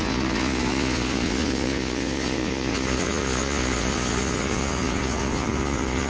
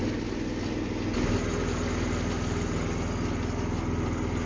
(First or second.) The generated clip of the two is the first